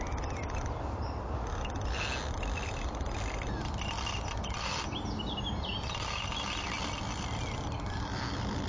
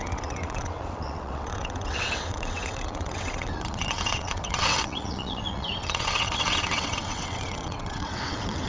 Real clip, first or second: first